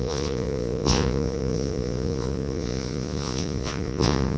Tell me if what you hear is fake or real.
fake